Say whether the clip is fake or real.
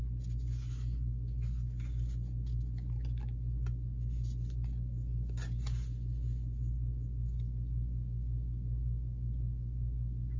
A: real